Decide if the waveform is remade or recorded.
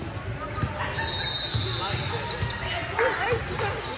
recorded